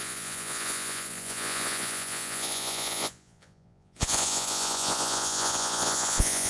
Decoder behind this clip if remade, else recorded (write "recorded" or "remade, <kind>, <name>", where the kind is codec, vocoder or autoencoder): remade, vocoder, Vocos